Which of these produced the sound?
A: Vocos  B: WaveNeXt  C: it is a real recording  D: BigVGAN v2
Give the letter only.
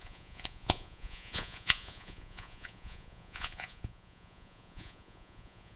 A